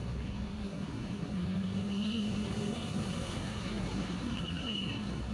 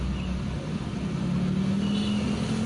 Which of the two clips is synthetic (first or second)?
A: first